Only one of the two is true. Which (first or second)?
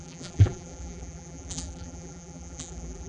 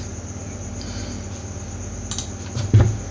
second